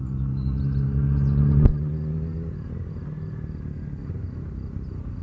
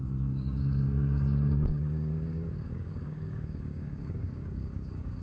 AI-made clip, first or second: second